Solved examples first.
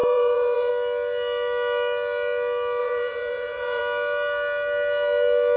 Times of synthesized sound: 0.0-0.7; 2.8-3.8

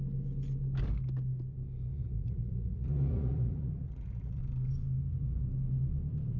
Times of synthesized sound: 1.9-4.4